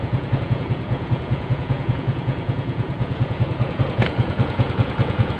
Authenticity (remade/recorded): remade